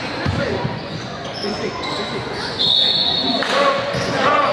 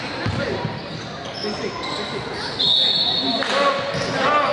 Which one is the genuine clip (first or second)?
second